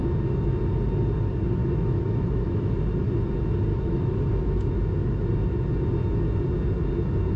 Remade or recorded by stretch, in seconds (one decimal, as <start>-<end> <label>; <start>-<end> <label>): 0.0-1.6 recorded; 1.6-2.8 remade; 2.8-3.7 recorded; 3.7-5.3 remade; 5.3-7.4 recorded